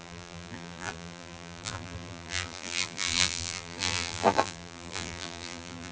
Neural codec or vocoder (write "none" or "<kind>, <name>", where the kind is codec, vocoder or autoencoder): vocoder, BigVGAN v2